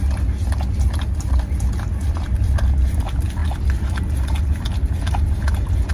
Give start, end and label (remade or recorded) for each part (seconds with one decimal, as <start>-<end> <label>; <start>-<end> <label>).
0.0-5.9 recorded